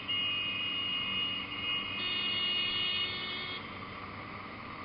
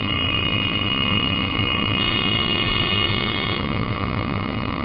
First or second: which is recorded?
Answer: first